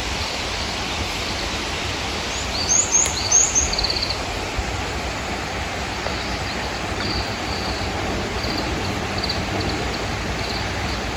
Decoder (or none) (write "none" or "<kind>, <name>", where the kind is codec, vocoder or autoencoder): none